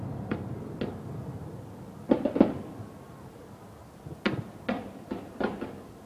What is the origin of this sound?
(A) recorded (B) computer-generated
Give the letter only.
A